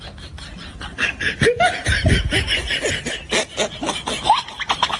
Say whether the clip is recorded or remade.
recorded